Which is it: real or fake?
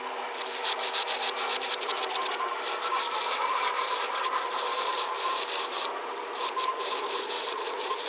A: fake